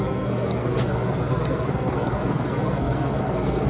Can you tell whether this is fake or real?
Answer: fake